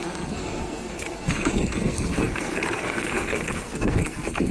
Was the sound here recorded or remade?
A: remade